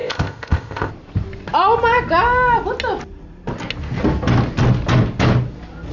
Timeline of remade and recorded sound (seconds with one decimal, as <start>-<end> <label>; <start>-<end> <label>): 0.0-0.9 remade; 0.9-5.9 recorded